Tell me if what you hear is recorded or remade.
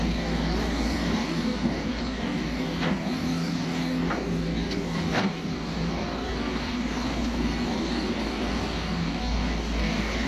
remade